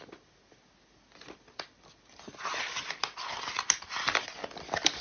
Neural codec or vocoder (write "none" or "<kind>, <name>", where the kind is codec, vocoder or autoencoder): none